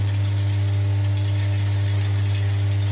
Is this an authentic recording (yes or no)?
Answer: yes